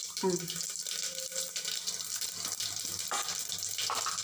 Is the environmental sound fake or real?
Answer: real